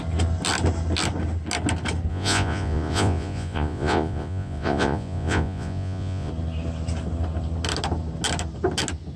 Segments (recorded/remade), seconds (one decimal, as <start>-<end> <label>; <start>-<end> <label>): 0.0-2.1 recorded; 2.1-6.3 remade; 6.3-9.2 recorded